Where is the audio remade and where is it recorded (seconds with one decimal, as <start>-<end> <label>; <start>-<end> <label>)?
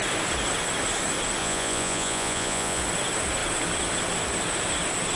0.0-1.4 recorded; 1.4-2.8 remade; 2.8-5.2 recorded